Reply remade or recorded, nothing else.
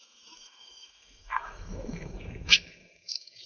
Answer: remade